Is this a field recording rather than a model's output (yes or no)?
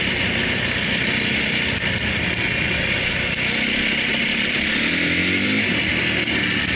yes